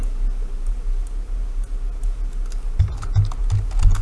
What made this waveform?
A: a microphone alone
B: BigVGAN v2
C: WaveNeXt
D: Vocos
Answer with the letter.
A